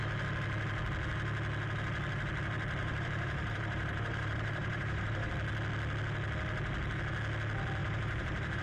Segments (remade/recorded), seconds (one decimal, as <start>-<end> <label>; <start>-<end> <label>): 0.0-2.8 recorded; 2.8-5.3 remade; 5.3-7.8 recorded; 7.8-8.6 remade